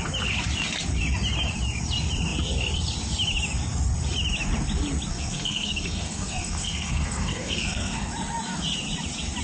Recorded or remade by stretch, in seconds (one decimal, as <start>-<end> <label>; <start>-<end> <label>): 0.0-5.1 recorded; 5.1-8.1 remade; 8.1-9.4 recorded